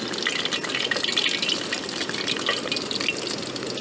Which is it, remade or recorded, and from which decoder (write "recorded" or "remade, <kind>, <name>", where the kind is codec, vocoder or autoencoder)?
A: recorded